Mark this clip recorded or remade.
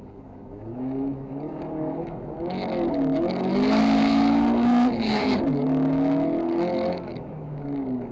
remade